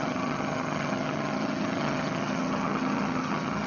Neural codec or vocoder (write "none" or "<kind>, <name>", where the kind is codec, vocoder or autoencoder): vocoder, HiFi-GAN